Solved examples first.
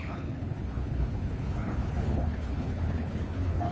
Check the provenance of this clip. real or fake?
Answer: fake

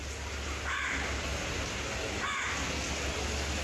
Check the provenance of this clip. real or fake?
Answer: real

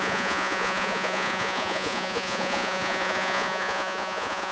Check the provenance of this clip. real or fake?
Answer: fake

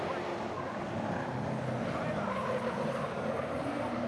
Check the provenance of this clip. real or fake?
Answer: real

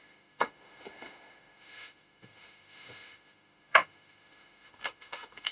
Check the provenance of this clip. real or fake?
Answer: fake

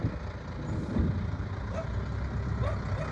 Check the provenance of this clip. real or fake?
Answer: real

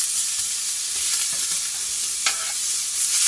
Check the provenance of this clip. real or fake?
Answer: real